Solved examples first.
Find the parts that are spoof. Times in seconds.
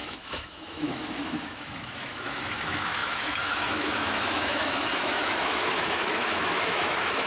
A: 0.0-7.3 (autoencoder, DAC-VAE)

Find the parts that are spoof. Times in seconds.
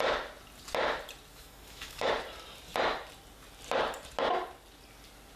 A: 1.3-2.1 (autoencoder, DAC-VAE)